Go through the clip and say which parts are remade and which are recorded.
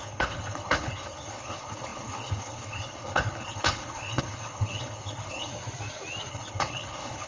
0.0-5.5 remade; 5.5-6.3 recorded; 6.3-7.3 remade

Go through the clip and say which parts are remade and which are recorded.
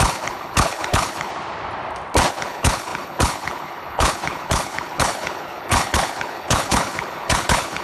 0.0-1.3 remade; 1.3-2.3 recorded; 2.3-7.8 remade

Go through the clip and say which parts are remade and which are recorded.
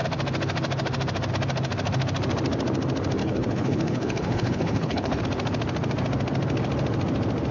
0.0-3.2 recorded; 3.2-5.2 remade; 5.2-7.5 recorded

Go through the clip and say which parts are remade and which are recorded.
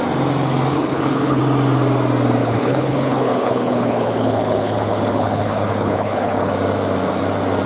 0.0-0.7 recorded; 0.7-1.4 remade; 1.4-2.4 recorded; 2.4-6.5 remade; 6.5-7.7 recorded